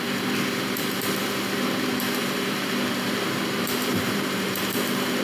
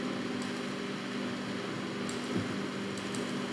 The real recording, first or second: second